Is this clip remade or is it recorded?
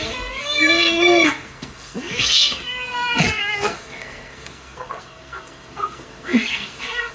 remade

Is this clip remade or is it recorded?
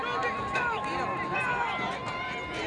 recorded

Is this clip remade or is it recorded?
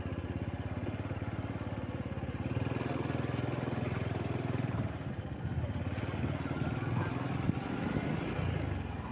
recorded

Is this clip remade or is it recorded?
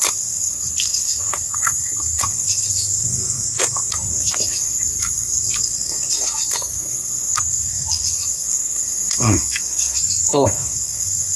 remade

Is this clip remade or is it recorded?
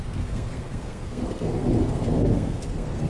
remade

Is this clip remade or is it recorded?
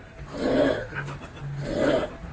recorded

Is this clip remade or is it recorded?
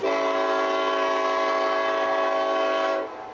recorded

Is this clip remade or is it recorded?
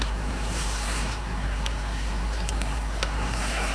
remade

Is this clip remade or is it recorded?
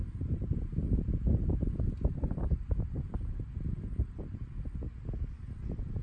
recorded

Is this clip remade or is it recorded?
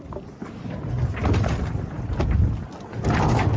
recorded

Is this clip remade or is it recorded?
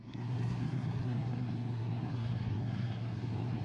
remade